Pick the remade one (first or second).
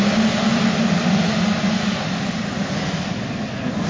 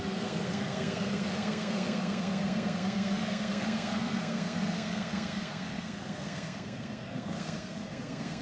second